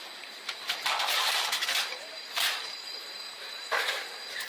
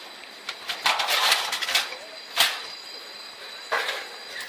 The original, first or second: second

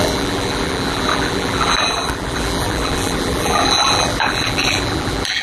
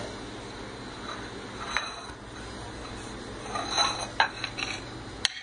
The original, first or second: second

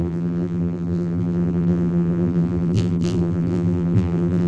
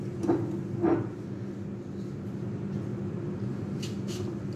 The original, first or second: second